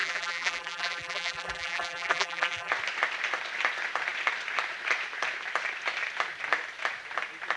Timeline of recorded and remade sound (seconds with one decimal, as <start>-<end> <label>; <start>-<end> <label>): 0.0-2.7 remade; 2.7-7.6 recorded